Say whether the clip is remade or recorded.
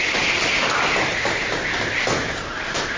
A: recorded